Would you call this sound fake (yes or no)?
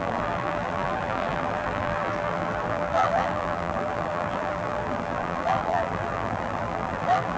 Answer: yes